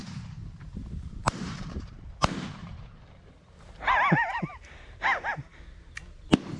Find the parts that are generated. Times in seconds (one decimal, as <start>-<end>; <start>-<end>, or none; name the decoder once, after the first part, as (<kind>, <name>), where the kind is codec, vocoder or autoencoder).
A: 1.2-2.1 (vocoder, BigVGAN v2); 2.6-5.6